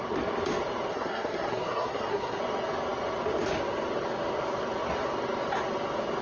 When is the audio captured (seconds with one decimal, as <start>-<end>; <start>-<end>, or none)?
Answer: 0.0-0.9; 2.4-6.2